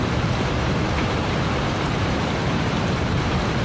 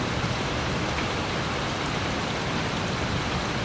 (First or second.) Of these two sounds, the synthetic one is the first